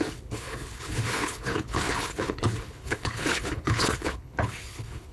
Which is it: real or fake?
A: fake